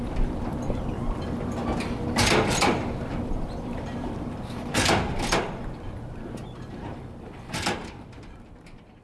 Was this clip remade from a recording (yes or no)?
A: yes